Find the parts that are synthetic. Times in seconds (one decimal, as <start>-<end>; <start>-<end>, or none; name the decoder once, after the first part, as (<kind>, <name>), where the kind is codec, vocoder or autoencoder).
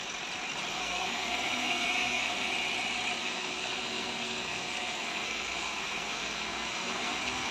0.7-2.5 (codec, SNAC); 3.2-7.5